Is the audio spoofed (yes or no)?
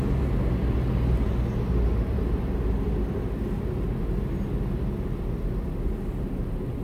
no